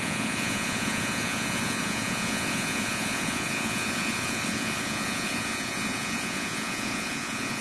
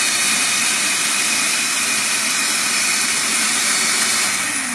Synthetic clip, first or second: first